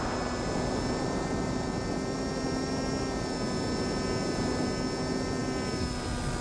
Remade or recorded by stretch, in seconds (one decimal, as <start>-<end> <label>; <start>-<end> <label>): 0.0-6.4 recorded